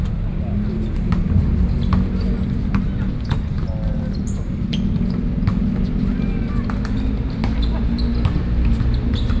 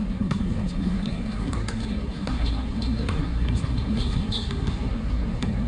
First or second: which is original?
first